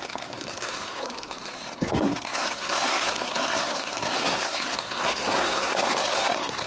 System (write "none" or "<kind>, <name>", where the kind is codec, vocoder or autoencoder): codec, SNAC